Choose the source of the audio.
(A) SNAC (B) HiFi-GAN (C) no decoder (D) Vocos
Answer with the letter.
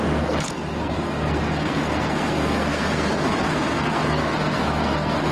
A